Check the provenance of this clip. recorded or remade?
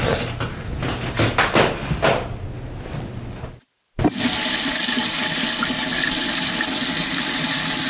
recorded